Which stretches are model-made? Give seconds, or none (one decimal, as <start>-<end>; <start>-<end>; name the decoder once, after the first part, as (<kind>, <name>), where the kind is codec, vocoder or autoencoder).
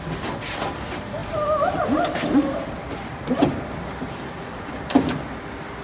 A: none